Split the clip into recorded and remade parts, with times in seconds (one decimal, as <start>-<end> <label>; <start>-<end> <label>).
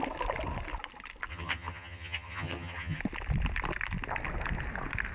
0.0-1.3 recorded; 1.3-3.0 remade; 3.0-5.1 recorded